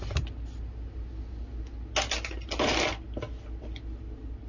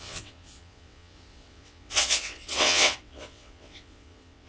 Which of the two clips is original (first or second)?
first